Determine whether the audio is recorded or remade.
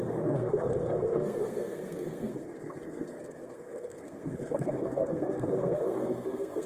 remade